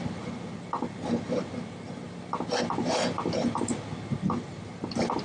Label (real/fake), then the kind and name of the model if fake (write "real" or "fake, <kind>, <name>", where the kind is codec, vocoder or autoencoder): real